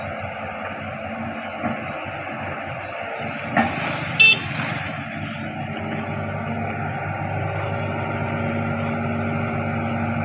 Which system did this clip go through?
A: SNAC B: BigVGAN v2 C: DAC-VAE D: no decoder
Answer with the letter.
D